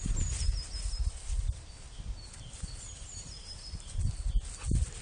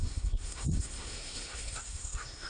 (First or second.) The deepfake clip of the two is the second